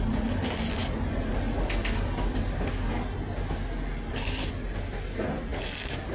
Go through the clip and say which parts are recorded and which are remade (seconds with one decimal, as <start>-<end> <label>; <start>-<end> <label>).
0.0-6.1 recorded